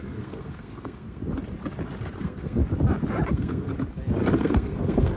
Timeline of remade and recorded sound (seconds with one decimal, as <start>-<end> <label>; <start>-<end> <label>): 0.0-1.2 remade; 1.2-2.2 recorded; 2.2-2.6 remade; 2.6-3.3 recorded; 3.3-3.7 remade; 3.7-4.3 recorded; 4.3-5.2 remade